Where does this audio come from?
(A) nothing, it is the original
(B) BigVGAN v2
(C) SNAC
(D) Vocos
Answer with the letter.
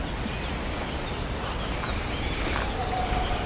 A